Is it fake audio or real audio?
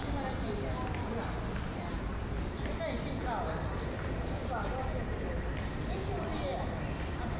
real